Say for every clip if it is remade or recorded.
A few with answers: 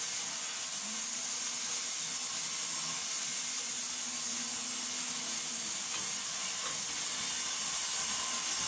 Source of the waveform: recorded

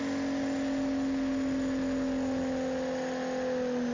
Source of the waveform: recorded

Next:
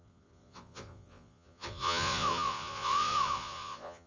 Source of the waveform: remade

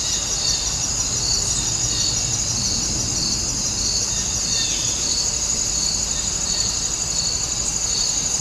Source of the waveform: recorded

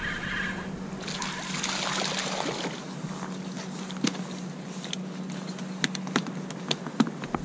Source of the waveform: recorded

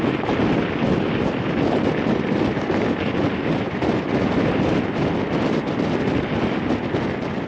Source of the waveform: recorded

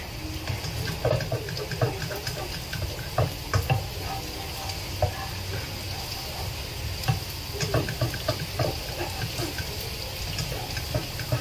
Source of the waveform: recorded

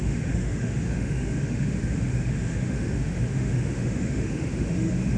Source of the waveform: remade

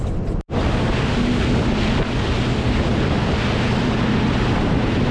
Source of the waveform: recorded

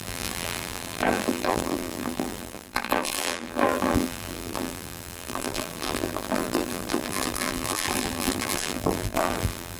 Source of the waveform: remade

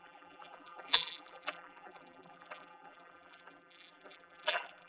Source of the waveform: remade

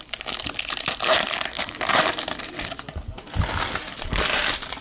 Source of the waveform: recorded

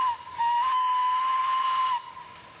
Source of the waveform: recorded